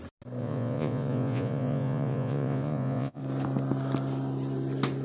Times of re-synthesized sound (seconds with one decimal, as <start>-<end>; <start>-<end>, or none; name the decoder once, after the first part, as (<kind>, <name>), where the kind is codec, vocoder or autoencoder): 0.4-3.2 (vocoder, Vocos)